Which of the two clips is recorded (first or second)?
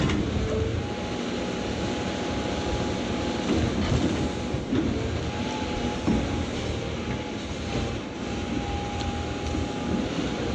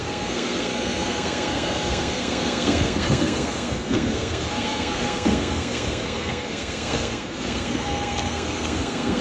first